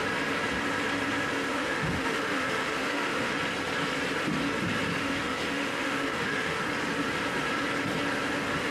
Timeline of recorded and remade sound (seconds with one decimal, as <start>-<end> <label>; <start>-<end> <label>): 0.0-1.5 recorded; 1.5-3.4 remade; 3.4-5.0 recorded; 5.0-6.6 remade; 6.6-8.7 recorded